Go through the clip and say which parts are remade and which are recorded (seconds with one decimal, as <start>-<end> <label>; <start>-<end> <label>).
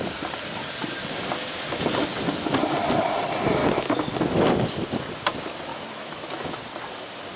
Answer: 0.0-3.6 recorded; 3.6-4.2 remade; 4.2-5.7 recorded; 5.7-6.6 remade; 6.6-7.4 recorded